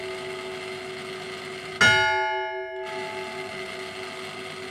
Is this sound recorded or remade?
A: recorded